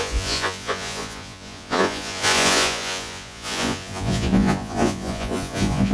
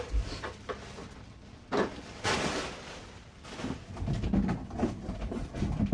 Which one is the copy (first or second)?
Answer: first